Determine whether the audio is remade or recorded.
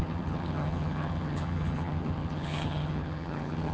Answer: remade